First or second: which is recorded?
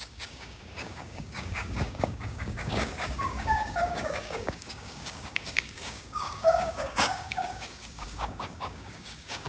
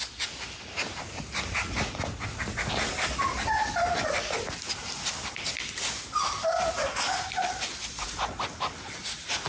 second